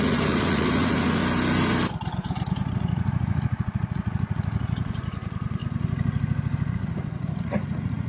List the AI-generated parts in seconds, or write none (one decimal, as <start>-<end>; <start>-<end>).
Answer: 0.0-1.2; 2.7-5.6; 6.7-8.1